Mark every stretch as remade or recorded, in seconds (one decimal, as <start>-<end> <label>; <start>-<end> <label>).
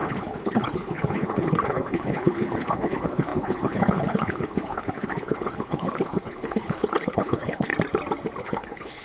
0.0-7.7 remade; 7.7-8.4 recorded; 8.4-9.0 remade